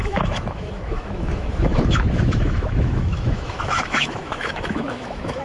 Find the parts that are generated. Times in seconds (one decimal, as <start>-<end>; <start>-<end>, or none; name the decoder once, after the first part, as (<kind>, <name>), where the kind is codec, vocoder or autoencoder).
0.0-5.4 (autoencoder, DAC-VAE)